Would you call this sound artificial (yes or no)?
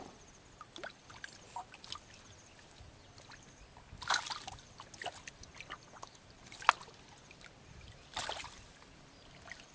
no